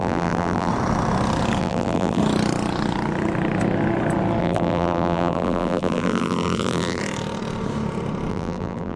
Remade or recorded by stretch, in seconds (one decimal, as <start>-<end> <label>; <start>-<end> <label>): 0.0-0.7 remade; 0.7-1.6 recorded; 1.6-2.2 remade; 2.2-4.4 recorded; 4.4-7.0 remade; 7.0-8.3 recorded; 8.3-9.0 remade